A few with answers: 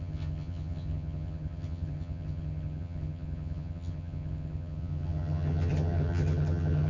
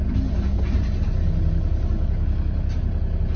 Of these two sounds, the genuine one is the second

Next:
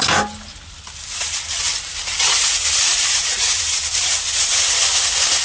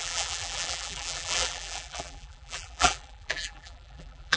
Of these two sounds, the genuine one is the first